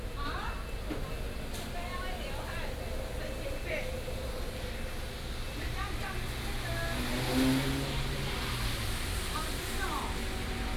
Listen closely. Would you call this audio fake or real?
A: real